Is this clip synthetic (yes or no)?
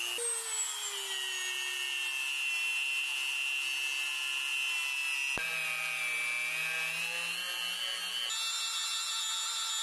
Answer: no